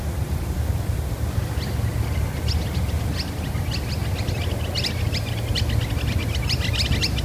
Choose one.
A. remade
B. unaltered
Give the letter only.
B